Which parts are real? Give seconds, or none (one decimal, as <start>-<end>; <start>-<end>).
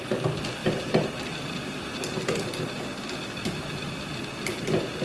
0.0-5.0